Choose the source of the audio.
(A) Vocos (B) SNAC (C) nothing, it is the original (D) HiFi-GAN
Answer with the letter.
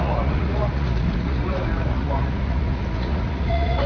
A